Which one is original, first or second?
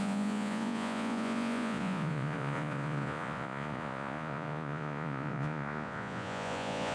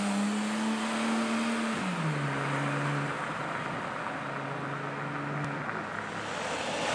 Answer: second